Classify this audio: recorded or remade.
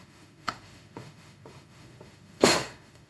remade